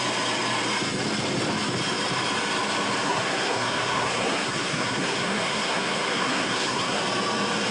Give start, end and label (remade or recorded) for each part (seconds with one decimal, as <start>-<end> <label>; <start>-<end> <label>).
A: 0.0-3.0 recorded; 3.0-7.0 remade; 7.0-7.7 recorded